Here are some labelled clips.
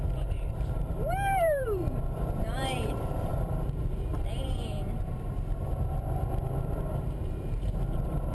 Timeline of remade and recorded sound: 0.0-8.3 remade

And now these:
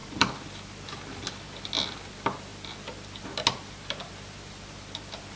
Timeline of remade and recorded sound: 0.0-5.4 recorded

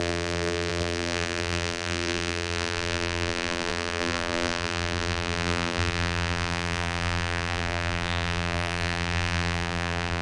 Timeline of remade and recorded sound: 0.0-10.2 remade

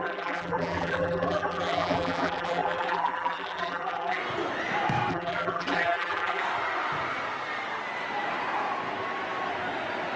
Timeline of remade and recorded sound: 0.0-4.2 remade; 4.2-5.1 recorded; 5.1-6.4 remade; 6.4-10.2 recorded

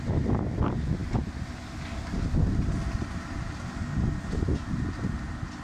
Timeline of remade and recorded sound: 0.0-5.6 recorded

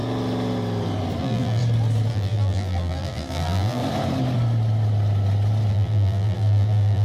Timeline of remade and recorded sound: 0.0-1.2 recorded; 1.2-1.6 remade; 1.6-2.1 recorded; 2.1-3.8 remade; 3.8-5.7 recorded; 5.7-7.0 remade